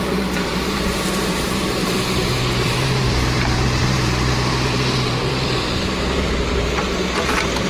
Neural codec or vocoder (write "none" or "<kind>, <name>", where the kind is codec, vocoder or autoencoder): vocoder, BigVGAN v2